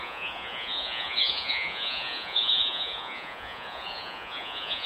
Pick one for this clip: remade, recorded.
remade